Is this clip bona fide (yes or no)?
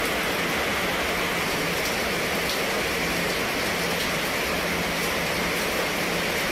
yes